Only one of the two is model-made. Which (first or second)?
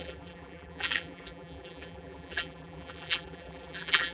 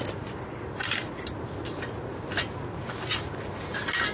first